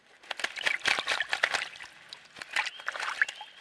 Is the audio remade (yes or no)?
no